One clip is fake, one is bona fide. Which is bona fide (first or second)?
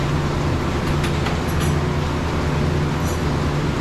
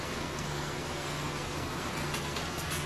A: first